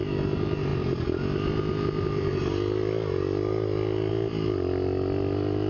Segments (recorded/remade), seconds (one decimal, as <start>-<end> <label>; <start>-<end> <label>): 0.0-5.7 recorded